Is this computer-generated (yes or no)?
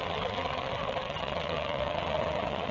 yes